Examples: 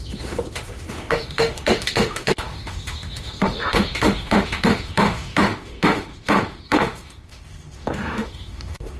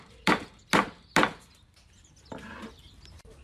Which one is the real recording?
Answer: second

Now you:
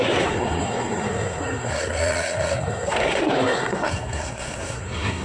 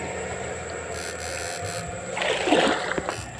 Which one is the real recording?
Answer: second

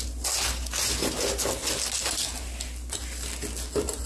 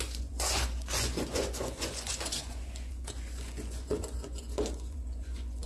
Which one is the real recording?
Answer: first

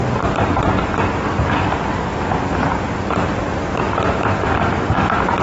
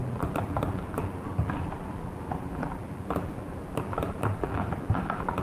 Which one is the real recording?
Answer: first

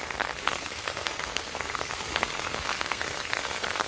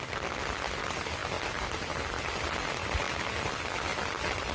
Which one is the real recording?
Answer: second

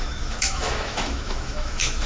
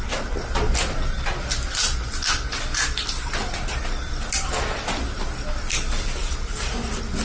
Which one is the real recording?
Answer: second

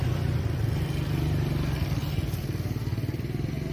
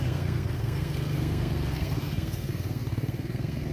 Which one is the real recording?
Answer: first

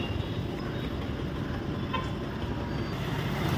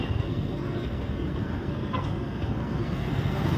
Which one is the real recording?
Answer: first